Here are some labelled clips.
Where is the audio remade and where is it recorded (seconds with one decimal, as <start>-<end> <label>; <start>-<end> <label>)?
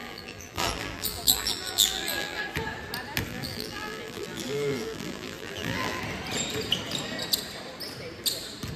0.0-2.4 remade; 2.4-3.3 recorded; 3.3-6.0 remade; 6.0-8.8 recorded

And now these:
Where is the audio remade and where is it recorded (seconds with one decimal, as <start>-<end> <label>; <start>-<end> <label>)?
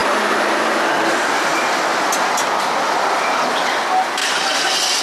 0.0-0.9 remade; 0.9-4.2 recorded; 4.2-5.0 remade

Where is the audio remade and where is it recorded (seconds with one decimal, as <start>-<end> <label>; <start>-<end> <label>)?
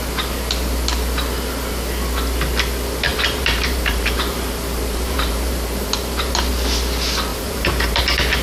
0.0-3.1 recorded; 3.1-6.5 remade; 6.5-7.3 recorded; 7.3-8.0 remade; 8.0-8.4 recorded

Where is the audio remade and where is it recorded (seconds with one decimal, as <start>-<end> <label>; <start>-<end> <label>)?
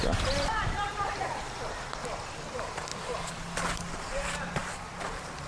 0.0-2.9 remade; 2.9-3.9 recorded; 3.9-4.6 remade; 4.6-5.5 recorded